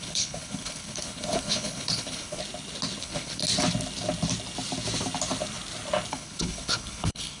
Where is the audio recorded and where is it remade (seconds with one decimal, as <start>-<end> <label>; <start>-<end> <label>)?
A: 0.0-2.4 remade; 2.4-3.0 recorded; 3.0-3.4 remade; 3.4-6.1 recorded; 6.1-7.4 remade